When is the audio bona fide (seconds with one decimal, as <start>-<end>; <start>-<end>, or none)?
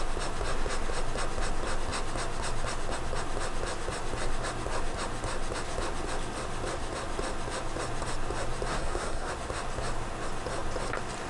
0.0-8.7; 9.3-11.3